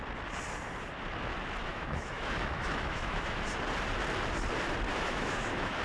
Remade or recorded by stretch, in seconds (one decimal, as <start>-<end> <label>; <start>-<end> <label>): 0.0-1.7 recorded; 1.7-3.4 remade; 3.4-4.9 recorded; 4.9-5.8 remade